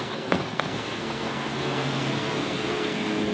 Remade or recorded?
remade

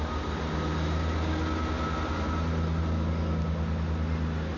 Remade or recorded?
recorded